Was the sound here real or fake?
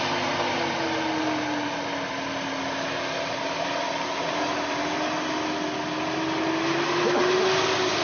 real